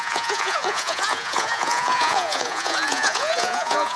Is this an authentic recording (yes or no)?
no